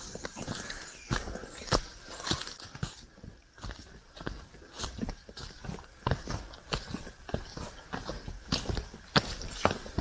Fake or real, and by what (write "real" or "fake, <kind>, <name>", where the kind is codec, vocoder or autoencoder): real